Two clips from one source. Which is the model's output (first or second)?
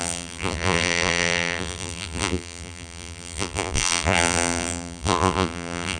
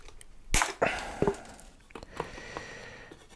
first